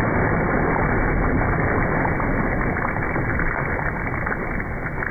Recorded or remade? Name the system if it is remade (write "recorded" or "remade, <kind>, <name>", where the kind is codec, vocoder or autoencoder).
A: recorded